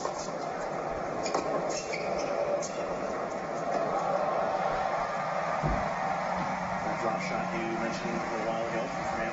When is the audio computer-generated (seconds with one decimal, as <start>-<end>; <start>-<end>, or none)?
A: 2.6-3.3